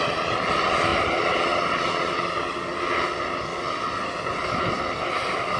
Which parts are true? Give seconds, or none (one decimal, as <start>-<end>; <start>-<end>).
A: 0.0-5.6